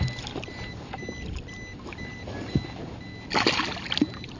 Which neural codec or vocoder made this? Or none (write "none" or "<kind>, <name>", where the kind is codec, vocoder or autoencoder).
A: none